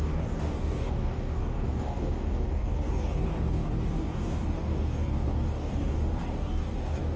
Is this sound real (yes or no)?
no